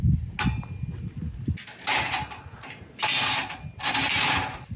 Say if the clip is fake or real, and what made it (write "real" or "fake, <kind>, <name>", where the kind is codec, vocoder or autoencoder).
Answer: real